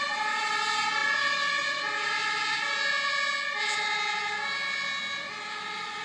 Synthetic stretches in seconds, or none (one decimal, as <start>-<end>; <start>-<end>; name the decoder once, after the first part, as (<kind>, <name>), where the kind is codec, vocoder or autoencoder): none

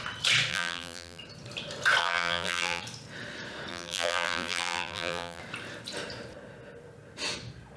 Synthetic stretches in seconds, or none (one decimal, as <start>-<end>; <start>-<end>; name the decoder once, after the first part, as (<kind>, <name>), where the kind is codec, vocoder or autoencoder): 0.5-1.2 (vocoder, BigVGAN v2); 2.0-2.8; 3.7-5.4

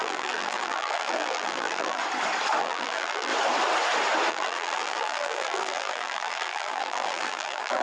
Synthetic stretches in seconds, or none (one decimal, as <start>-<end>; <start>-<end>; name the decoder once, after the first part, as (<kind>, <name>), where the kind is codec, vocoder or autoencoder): 0.0-2.0 (vocoder, BigVGAN v2); 2.6-3.3; 4.3-7.8

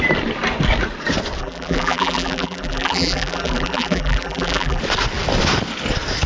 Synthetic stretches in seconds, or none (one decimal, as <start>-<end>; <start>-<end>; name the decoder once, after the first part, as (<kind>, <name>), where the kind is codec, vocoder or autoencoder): 1.4-4.8 (vocoder, BigVGAN v2)

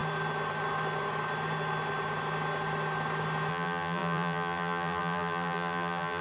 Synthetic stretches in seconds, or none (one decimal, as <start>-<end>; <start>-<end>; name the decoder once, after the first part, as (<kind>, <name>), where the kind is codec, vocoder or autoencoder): 3.5-6.2 (vocoder, BigVGAN v2)

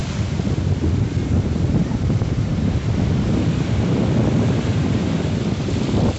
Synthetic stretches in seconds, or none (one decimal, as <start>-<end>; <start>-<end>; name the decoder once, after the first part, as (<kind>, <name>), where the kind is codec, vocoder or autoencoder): 1.8-2.9 (vocoder, BigVGAN v2); 4.7-5.3

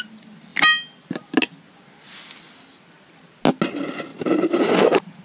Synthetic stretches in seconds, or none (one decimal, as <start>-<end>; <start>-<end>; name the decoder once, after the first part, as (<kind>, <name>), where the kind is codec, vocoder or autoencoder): 4.1-5.2 (vocoder, BigVGAN v2)